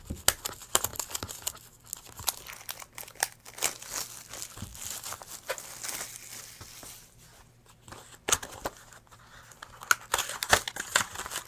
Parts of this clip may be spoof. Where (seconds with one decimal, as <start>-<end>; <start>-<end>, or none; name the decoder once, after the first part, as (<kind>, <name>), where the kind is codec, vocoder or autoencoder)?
none